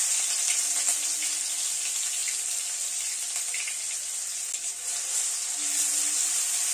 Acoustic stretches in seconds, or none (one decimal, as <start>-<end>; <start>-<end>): 0.0-6.7